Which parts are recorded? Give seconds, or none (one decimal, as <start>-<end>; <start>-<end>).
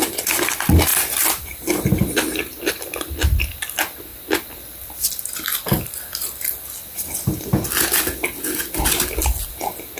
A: 0.0-10.0